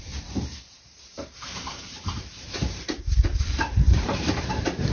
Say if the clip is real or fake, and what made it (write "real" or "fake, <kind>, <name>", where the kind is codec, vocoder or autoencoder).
fake, vocoder, BigVGAN v2